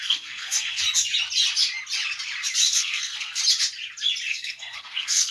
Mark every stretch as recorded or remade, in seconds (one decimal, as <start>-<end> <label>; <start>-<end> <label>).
0.0-0.8 remade; 0.8-2.7 recorded; 2.7-3.4 remade; 3.4-4.3 recorded; 4.3-5.3 remade